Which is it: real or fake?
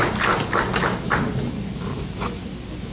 real